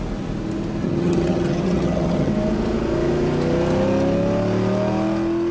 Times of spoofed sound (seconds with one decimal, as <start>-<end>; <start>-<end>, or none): 0.8-2.3